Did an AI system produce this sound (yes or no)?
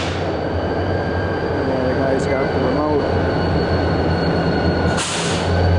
no